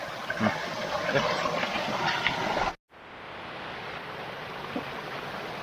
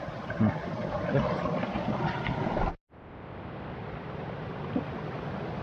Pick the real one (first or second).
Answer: first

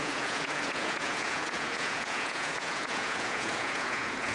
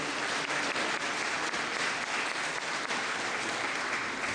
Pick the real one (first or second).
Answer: second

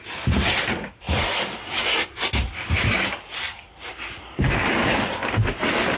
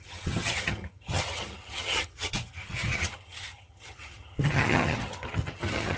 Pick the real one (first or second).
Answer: first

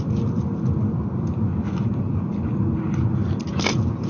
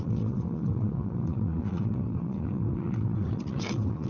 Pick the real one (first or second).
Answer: first